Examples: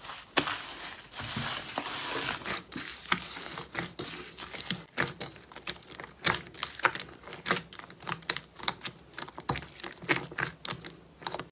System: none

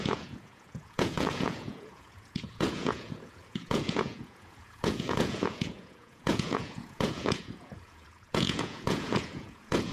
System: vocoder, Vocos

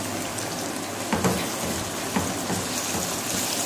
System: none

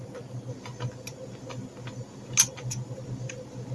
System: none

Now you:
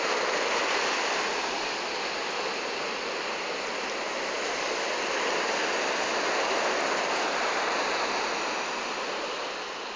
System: none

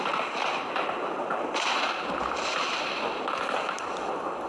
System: vocoder, BigVGAN v2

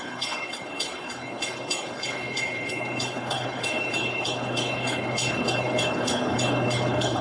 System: codec, HILCodec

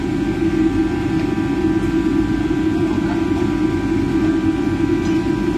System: none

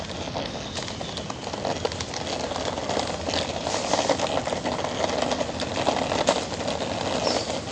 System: none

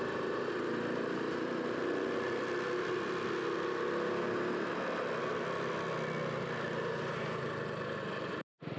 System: none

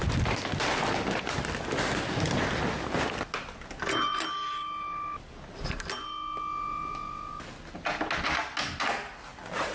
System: none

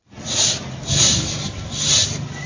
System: none